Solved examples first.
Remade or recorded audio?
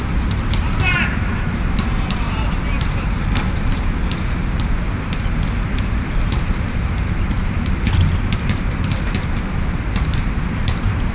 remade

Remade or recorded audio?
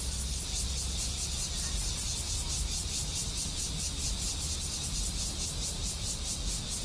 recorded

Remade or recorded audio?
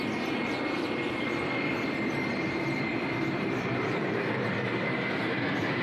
remade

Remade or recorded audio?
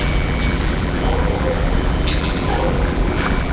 remade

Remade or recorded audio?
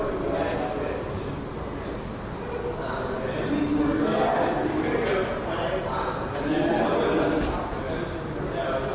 recorded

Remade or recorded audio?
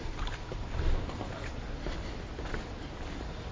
remade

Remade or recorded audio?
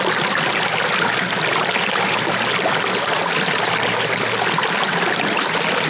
recorded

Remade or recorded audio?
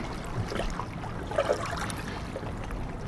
recorded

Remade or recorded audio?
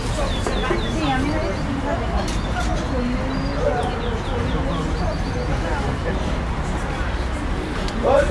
recorded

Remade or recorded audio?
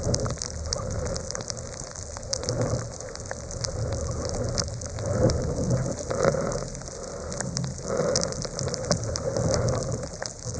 recorded